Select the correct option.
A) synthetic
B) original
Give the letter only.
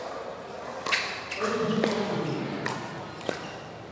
B